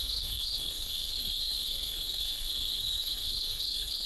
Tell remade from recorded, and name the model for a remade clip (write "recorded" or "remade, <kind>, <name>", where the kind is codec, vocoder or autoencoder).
remade, codec, SNAC